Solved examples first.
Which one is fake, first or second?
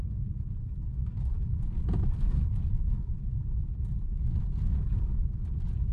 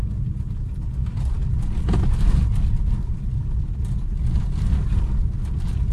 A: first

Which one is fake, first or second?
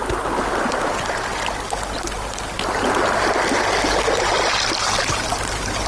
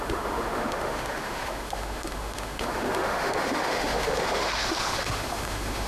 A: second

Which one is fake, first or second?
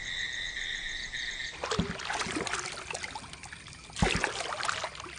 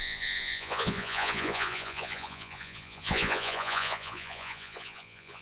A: second